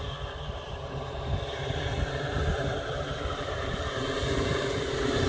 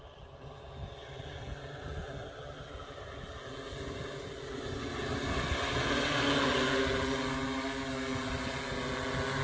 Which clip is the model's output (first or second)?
first